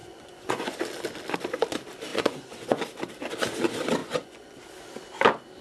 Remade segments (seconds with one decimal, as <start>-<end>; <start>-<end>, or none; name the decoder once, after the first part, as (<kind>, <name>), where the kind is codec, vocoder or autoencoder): 0.0-0.8 (vocoder, Vocos); 2.1-2.8; 4.0-4.6